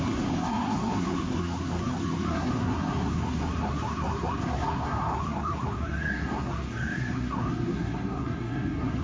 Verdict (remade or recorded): remade